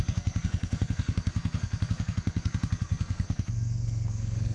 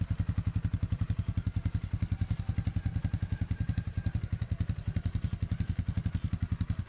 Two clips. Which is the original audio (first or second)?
second